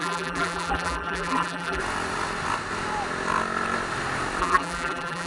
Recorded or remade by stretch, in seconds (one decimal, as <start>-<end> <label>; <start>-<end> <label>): 0.0-1.8 remade; 1.8-4.4 recorded; 4.4-5.3 remade